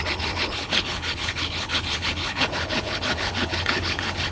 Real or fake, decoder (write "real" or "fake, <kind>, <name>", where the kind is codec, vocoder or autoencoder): fake, codec, HILCodec